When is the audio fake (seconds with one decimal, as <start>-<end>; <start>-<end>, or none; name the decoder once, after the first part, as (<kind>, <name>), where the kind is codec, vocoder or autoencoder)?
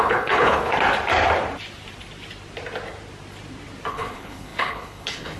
0.0-0.7 (codec, HILCodec); 3.9-5.4